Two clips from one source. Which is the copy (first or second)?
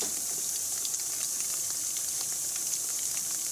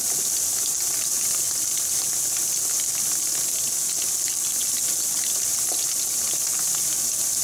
first